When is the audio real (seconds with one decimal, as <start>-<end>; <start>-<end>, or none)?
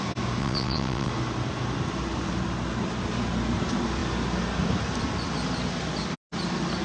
0.0-0.4; 1.1-6.8